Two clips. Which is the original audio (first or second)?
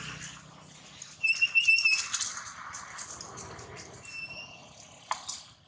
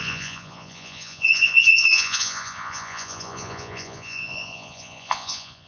first